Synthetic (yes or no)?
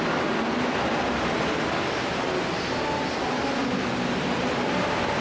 no